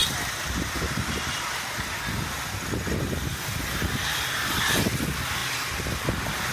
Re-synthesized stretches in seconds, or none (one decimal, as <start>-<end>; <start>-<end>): 5.4-5.9